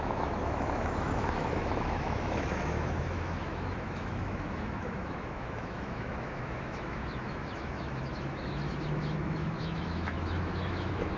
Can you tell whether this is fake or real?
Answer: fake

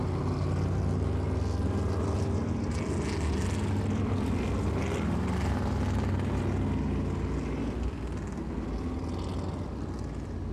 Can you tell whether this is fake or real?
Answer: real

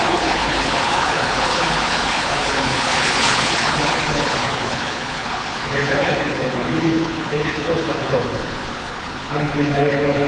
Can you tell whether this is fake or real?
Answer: fake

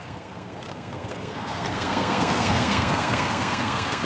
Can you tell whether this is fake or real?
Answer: fake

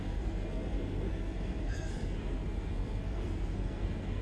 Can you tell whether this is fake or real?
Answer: fake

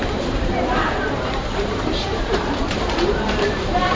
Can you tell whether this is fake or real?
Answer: fake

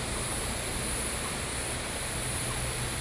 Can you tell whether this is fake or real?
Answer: real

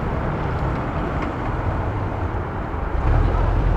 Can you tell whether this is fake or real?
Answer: fake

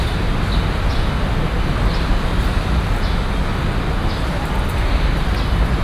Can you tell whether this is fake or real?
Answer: real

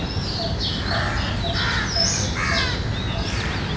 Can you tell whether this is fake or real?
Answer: real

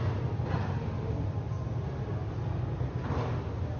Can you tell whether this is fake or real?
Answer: real